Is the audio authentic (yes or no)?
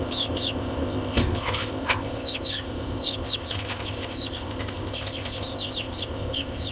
no